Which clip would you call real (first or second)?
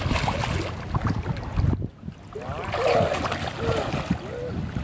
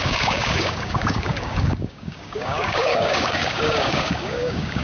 first